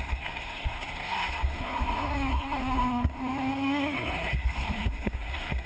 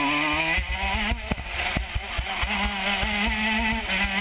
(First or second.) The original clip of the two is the second